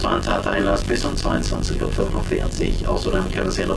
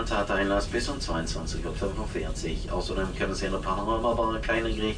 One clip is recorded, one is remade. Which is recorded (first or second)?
second